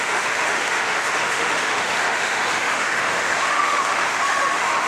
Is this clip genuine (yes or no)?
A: no